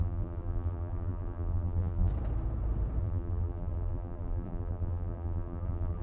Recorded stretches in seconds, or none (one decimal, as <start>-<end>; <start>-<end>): 2.1-3.0